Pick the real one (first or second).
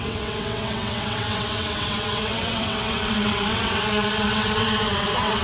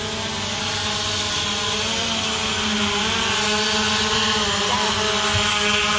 second